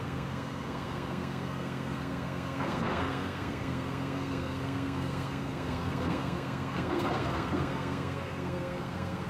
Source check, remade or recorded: remade